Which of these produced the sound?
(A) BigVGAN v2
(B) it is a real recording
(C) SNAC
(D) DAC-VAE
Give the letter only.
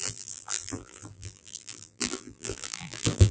A